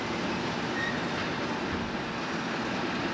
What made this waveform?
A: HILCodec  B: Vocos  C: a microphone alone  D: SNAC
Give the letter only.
C